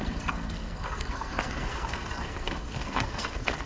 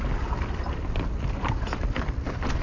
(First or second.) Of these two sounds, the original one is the second